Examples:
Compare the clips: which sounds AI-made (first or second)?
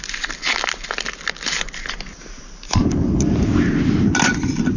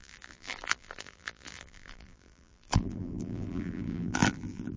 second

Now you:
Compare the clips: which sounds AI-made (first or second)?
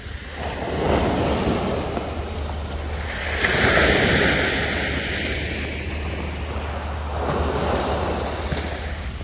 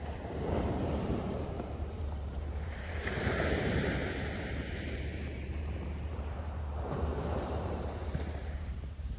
second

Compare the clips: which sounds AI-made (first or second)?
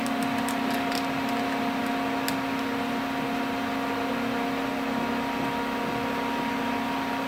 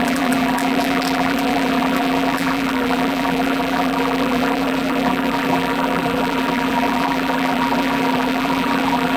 second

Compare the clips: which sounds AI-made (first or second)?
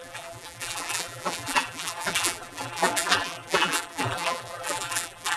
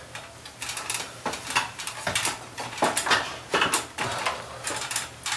first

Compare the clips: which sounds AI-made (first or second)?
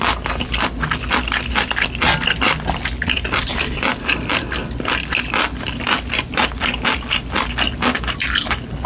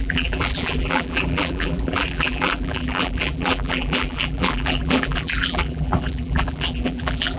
second